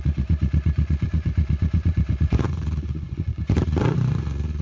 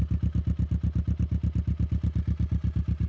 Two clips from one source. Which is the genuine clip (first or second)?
second